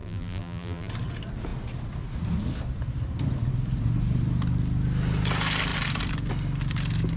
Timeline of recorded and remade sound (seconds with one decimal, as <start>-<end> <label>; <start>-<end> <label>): 0.0-0.9 remade; 0.9-7.2 recorded